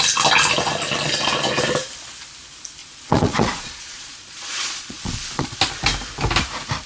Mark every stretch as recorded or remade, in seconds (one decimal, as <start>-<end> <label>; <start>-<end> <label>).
0.0-2.8 recorded; 2.8-5.6 remade; 5.6-6.9 recorded